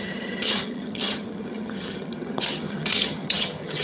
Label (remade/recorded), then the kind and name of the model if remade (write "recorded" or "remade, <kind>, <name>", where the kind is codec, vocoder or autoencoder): remade, vocoder, HiFi-GAN